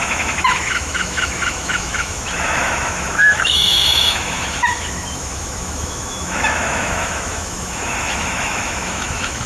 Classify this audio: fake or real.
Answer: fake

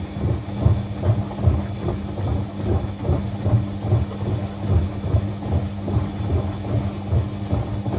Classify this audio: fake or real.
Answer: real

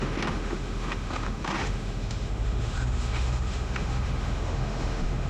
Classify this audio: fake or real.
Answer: fake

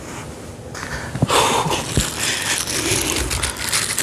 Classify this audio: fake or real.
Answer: real